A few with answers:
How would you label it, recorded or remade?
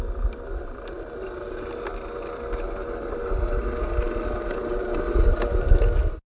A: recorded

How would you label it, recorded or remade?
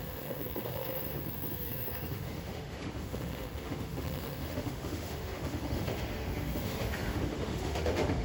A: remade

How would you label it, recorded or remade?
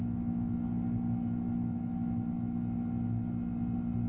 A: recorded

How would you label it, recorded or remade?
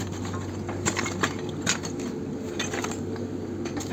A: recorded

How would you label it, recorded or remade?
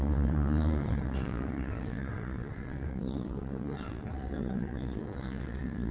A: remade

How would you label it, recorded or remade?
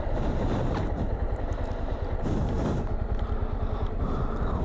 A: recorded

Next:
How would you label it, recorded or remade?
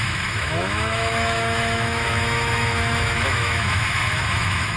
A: remade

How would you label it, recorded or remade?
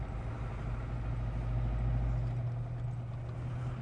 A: recorded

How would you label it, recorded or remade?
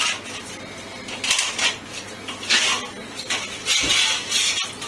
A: recorded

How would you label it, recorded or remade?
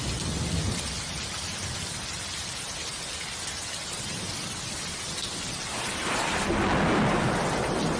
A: recorded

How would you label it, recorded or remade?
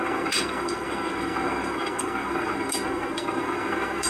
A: remade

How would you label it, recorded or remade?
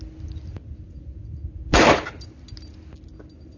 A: recorded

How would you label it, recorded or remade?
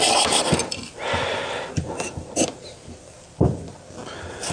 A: recorded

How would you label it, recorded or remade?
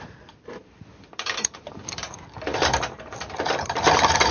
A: remade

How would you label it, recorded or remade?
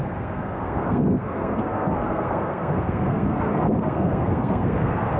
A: remade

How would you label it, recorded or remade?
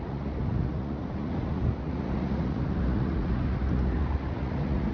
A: remade